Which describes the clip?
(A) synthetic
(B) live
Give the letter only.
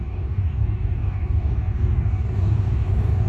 A